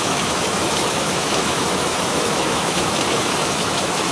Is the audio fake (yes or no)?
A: yes